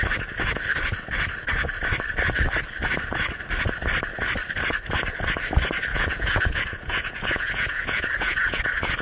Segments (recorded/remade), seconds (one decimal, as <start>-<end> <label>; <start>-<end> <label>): 0.0-5.9 recorded; 5.9-8.6 remade; 8.6-9.0 recorded

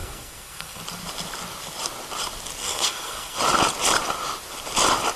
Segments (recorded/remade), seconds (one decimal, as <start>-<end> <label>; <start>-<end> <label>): 0.0-0.8 remade; 0.8-2.6 recorded; 2.6-3.4 remade; 3.4-5.2 recorded